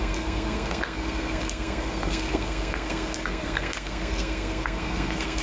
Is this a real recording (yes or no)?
no